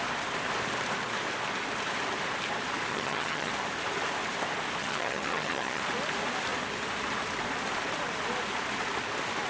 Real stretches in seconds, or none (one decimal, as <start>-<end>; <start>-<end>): 0.0-2.9; 3.5-4.8; 5.8-9.5